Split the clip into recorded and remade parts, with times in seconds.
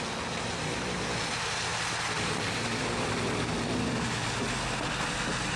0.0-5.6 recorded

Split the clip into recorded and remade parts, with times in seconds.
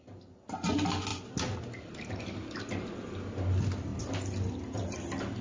0.0-5.4 recorded